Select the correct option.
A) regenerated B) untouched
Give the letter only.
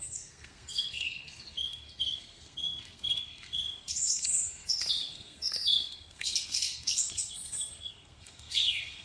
A